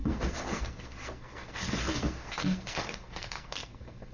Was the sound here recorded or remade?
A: remade